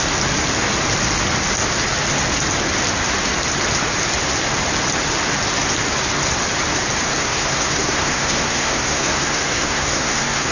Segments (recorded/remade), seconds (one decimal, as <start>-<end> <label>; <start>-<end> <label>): 0.0-7.2 recorded; 7.2-10.5 remade